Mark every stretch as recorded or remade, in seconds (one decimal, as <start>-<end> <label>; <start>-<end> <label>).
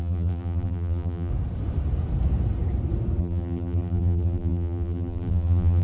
0.0-1.3 remade; 1.3-3.2 recorded; 3.2-5.8 remade